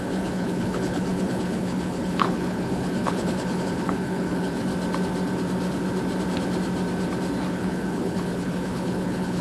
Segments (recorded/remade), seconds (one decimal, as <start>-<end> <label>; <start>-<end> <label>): 0.0-4.7 remade; 4.7-7.5 recorded; 7.5-9.4 remade